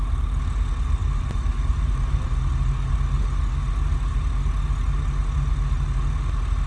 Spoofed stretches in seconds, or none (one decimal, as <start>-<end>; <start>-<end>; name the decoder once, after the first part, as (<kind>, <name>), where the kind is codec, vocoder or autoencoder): 1.0-2.3 (vocoder, BigVGAN v2)